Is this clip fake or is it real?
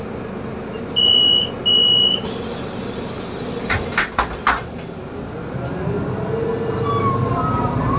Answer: real